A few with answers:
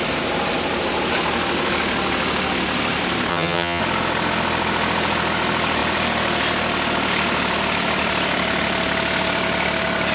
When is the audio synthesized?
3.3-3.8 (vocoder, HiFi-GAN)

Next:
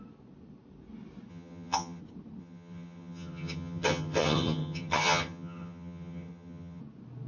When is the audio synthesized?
1.3-2.0 (vocoder, HiFi-GAN); 2.4-6.8